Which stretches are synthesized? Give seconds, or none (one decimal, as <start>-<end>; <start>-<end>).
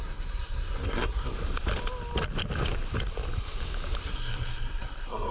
0.0-1.3; 4.0-5.3